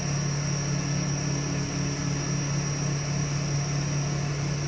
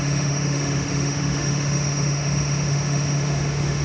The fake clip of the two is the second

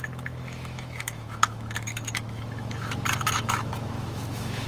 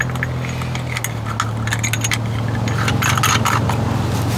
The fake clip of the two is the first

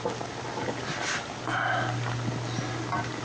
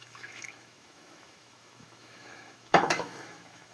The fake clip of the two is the second